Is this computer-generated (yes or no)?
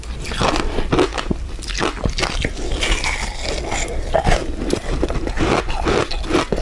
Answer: no